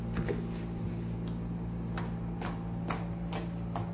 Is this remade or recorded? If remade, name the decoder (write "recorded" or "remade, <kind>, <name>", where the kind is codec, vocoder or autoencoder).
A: recorded